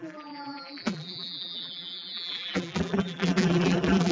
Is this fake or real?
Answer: fake